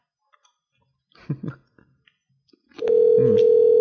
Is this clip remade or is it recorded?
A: recorded